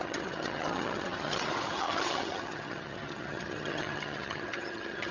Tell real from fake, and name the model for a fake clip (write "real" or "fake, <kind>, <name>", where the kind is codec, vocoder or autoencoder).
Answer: fake, vocoder, HiFi-GAN